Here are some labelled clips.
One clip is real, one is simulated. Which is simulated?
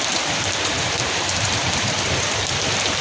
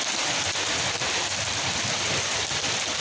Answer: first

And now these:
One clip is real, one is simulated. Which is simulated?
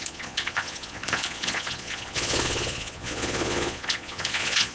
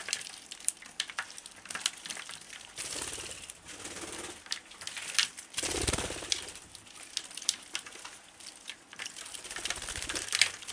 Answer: first